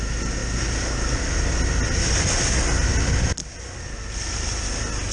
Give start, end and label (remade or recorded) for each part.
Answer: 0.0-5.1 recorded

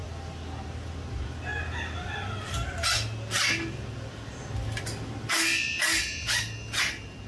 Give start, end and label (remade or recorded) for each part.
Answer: 0.0-0.5 remade; 0.5-7.3 recorded

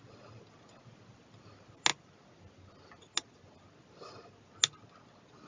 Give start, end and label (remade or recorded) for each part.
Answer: 0.0-5.5 recorded

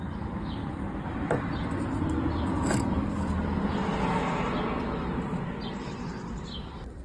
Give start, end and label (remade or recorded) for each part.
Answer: 0.0-0.6 recorded; 0.6-2.3 remade; 2.3-6.1 recorded; 6.1-7.0 remade

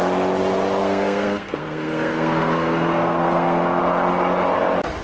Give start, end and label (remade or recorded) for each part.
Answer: 0.0-0.8 recorded; 0.8-3.8 remade; 3.8-5.0 recorded